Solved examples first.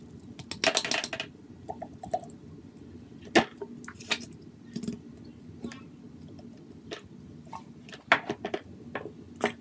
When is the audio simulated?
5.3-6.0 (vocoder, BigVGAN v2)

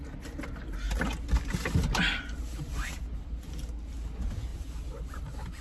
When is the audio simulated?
none

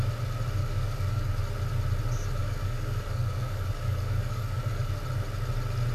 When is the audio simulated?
0.6-1.4 (codec, DAC); 2.4-4.9

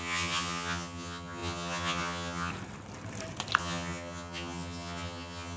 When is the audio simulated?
0.0-2.5 (vocoder, HiFi-GAN); 3.6-5.6

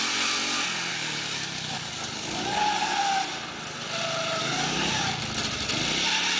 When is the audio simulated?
0.9-2.6 (codec, DAC); 4.4-5.2

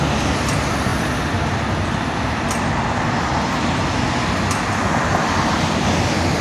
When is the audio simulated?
none

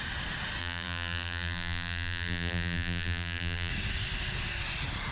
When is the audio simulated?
0.6-3.7 (vocoder, BigVGAN v2)

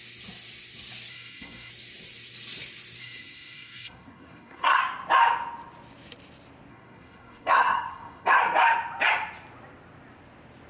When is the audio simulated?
1.1-1.7 (codec, SNAC); 3.0-4.8; 6.7-8.4